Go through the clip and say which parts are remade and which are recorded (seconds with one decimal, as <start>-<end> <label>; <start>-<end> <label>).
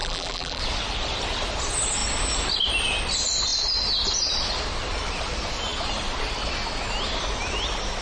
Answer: 0.0-0.6 remade; 0.6-8.0 recorded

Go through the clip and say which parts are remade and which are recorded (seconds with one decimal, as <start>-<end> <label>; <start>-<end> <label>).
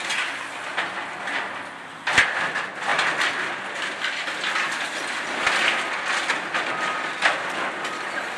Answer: 0.0-8.4 recorded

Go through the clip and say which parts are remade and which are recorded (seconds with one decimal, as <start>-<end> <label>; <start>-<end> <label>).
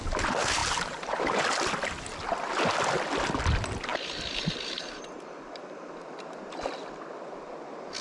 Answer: 0.0-0.6 recorded; 0.6-1.4 remade; 1.4-3.9 recorded; 3.9-5.4 remade; 5.4-8.0 recorded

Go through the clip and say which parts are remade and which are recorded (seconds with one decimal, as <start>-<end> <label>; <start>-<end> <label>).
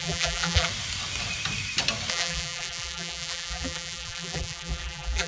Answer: 0.0-0.7 remade; 0.7-2.1 recorded; 2.1-5.3 remade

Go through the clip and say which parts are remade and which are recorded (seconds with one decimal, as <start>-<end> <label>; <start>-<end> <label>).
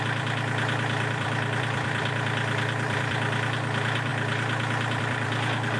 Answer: 0.0-4.1 remade; 4.1-5.0 recorded; 5.0-5.8 remade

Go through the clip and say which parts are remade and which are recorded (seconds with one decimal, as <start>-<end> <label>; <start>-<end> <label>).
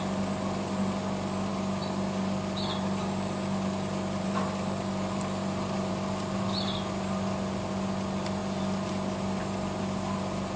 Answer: 0.0-1.5 recorded; 1.5-5.9 remade; 5.9-10.6 recorded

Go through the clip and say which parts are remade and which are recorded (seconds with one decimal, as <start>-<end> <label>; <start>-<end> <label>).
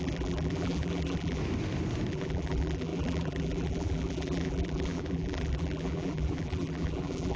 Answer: 0.0-1.4 remade; 1.4-2.1 recorded; 2.1-7.4 remade